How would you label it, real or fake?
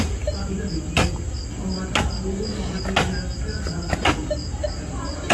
real